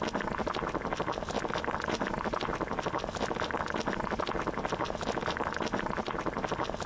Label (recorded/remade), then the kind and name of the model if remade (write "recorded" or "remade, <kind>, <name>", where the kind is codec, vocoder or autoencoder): recorded